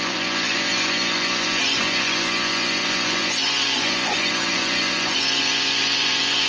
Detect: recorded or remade remade